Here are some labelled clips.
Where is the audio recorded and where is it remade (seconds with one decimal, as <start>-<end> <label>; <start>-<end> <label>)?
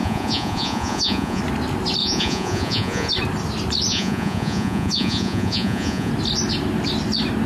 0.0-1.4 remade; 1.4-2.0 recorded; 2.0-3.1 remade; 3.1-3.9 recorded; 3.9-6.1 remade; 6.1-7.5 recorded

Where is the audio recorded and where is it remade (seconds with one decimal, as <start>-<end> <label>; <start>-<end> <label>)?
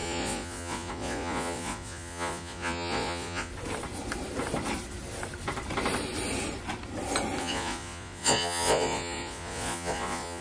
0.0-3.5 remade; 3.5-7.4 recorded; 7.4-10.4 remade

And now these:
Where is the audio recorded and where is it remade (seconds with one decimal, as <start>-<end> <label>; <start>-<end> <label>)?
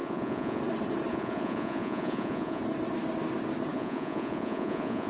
0.0-0.6 remade; 0.6-1.1 recorded; 1.1-2.6 remade; 2.6-3.7 recorded; 3.7-5.1 remade